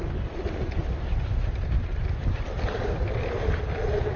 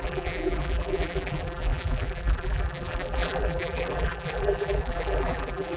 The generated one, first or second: second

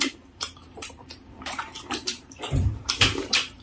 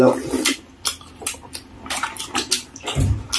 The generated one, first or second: first